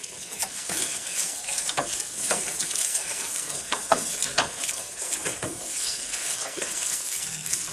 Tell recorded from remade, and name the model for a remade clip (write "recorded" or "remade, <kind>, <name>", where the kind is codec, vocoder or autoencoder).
remade, codec, SNAC